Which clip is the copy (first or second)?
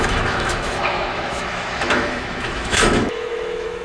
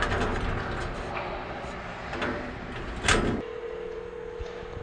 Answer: first